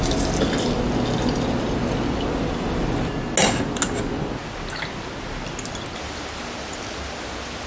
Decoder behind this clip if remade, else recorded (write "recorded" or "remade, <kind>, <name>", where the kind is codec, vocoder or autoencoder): recorded